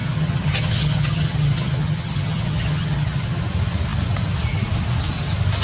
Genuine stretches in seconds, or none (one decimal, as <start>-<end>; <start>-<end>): 3.4-5.6